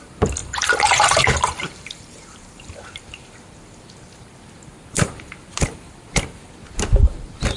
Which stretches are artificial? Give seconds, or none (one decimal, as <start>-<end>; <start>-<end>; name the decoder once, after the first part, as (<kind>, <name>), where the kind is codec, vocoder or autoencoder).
0.4-2.8 (vocoder, BigVGAN v2)